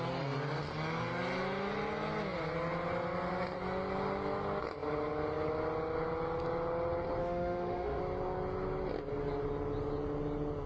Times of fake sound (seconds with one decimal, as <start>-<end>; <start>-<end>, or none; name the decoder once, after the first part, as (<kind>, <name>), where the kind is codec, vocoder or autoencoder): 7.2-8.0 (autoencoder, DAC-VAE)